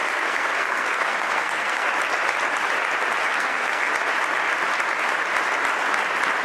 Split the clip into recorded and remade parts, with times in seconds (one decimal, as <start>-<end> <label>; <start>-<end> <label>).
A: 0.0-1.9 remade; 1.9-3.3 recorded; 3.3-3.9 remade; 3.9-6.4 recorded